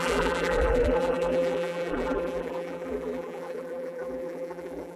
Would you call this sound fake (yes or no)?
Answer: yes